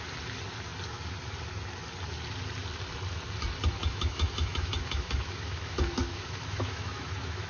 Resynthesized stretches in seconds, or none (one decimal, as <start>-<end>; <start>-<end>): 3.8-7.5